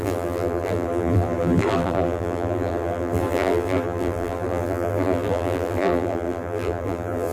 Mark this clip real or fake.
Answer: fake